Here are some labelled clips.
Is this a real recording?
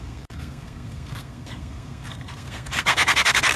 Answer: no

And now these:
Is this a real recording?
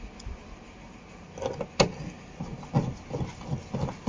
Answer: yes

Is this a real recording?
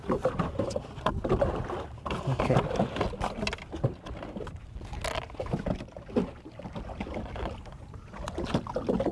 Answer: yes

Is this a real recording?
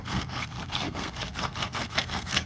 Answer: no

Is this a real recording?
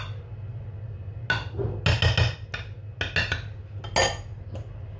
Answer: yes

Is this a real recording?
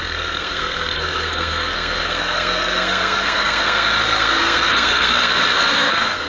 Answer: no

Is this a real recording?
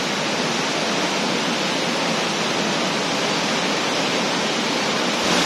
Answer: yes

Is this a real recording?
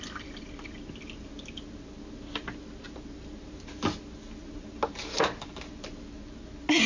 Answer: yes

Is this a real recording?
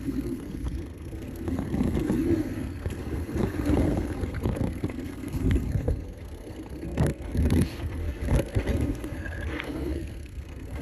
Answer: no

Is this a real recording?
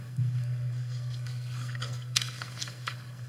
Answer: no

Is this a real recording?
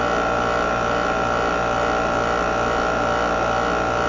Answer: yes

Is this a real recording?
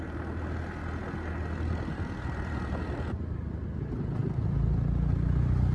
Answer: yes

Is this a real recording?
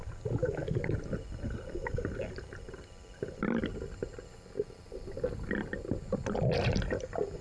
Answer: yes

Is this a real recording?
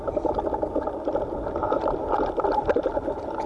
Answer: yes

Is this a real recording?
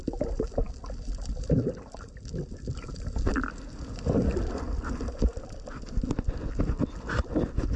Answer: yes